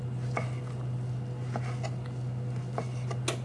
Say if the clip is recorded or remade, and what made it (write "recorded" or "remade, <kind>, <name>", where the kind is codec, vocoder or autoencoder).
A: recorded